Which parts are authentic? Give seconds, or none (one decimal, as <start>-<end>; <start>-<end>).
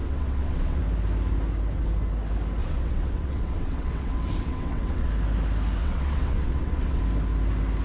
0.8-2.6; 5.1-5.8; 7.0-7.8